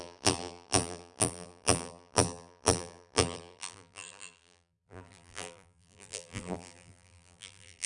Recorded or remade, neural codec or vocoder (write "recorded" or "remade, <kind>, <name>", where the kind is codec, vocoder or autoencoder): remade, vocoder, BigVGAN v2